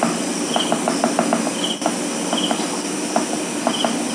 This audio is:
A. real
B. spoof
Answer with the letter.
A